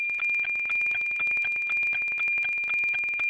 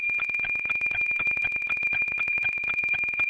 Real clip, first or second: first